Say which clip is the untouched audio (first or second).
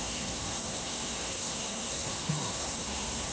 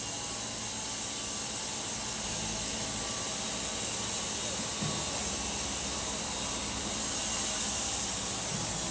second